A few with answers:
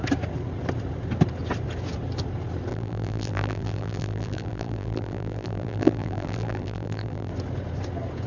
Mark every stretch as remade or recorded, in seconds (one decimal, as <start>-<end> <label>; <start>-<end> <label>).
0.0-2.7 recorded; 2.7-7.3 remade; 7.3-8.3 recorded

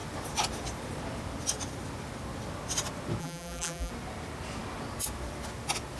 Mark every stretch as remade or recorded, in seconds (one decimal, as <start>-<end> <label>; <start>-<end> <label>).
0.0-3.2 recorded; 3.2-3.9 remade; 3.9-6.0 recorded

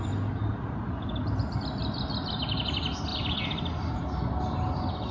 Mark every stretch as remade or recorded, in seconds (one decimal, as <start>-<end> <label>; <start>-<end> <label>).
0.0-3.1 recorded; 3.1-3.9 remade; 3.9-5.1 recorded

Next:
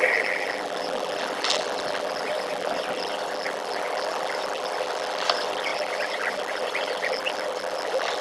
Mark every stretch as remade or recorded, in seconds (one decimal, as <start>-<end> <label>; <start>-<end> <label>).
0.0-8.2 remade